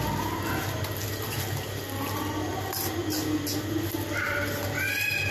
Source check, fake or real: real